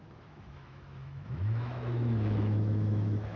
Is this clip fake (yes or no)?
yes